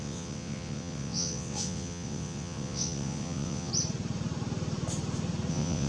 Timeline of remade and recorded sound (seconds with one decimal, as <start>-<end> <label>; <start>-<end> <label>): 0.0-3.7 remade; 3.7-5.5 recorded; 5.5-5.9 remade